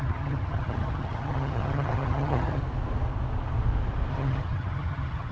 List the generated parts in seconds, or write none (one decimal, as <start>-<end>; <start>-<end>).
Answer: 0.0-2.6; 4.1-5.3